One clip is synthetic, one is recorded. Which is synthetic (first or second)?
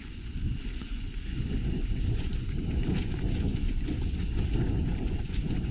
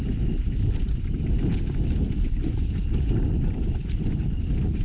first